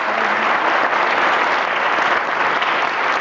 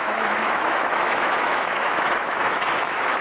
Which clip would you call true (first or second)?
first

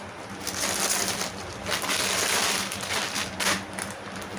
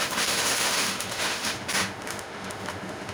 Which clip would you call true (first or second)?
first